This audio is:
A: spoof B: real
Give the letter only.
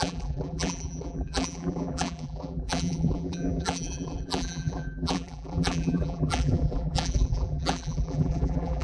A